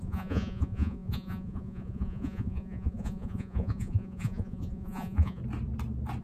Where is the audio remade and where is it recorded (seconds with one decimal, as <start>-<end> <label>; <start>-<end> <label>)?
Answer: 0.0-5.4 remade; 5.4-6.2 recorded